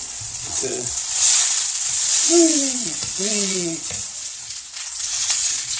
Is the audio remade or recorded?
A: remade